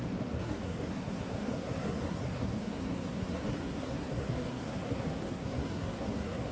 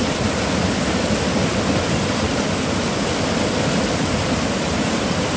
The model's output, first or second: first